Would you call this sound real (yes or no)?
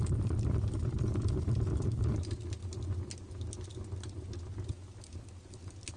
yes